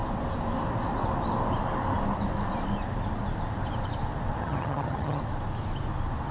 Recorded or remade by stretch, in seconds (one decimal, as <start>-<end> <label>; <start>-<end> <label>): 0.0-4.4 recorded; 4.4-5.2 remade; 5.2-6.3 recorded